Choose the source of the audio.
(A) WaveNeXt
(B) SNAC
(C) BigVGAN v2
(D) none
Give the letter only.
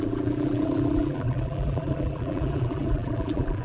C